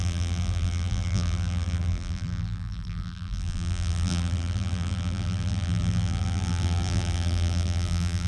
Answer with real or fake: fake